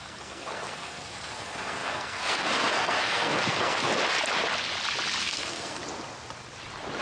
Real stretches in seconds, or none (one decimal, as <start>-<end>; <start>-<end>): 3.9-5.2; 5.8-7.0

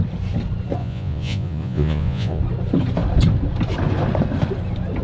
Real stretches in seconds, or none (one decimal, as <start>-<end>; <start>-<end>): 0.0-0.8; 2.4-5.0

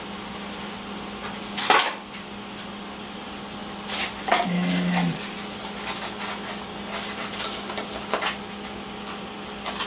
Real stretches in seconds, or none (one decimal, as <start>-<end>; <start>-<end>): 0.0-9.9